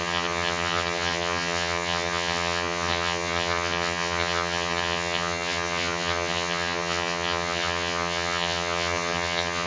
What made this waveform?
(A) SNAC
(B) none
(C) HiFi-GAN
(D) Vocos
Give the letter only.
C